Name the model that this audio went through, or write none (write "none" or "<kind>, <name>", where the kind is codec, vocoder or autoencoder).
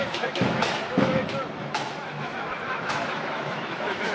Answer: autoencoder, DAC-VAE